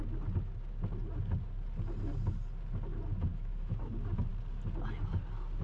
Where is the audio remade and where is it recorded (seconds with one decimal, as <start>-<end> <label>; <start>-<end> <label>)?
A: 0.0-3.3 recorded; 3.3-3.9 remade; 3.9-5.6 recorded